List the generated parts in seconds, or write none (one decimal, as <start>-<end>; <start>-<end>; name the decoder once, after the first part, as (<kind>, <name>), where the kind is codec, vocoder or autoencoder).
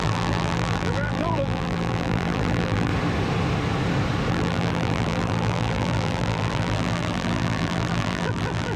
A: 0.0-2.9 (vocoder, BigVGAN v2); 4.3-8.8